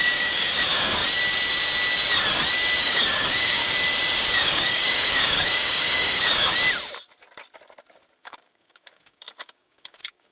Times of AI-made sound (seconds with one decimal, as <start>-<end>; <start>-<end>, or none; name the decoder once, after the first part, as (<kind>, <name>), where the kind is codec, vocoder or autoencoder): 0.0-1.0 (codec, DAC); 2.8-3.6; 4.3-6.5; 8.2-10.3